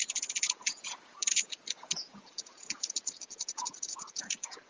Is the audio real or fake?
fake